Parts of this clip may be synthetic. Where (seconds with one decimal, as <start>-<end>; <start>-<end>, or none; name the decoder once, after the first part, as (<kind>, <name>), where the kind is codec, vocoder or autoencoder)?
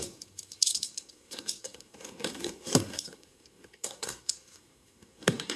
0.0-5.6 (codec, SNAC)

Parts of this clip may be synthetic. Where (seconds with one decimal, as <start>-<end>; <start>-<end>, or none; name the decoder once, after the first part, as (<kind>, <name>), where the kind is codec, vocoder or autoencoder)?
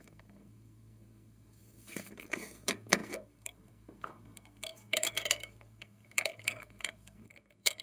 0.0-7.8 (codec, SNAC)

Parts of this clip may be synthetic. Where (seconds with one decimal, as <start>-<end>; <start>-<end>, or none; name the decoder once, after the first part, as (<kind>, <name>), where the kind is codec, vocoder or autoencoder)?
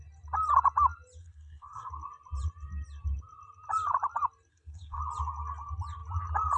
1.2-1.9 (codec, SNAC); 4.5-5.0